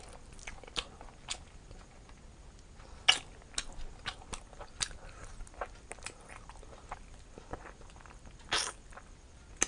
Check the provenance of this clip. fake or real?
real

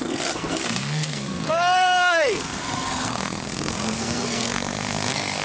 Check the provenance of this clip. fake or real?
fake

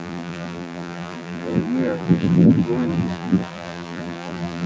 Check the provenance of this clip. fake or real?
fake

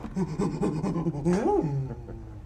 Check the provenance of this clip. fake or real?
real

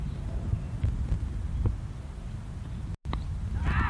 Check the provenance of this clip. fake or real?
real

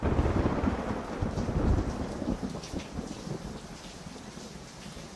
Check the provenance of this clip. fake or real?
real